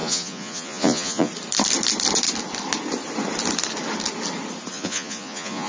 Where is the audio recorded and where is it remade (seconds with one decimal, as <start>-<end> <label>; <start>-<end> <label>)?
0.0-1.3 remade; 1.3-4.7 recorded; 4.7-5.7 remade